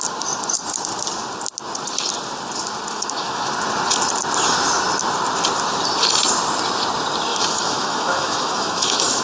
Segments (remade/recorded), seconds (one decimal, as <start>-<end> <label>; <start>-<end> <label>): 0.0-2.9 recorded; 2.9-3.5 remade; 3.5-7.3 recorded; 7.3-9.2 remade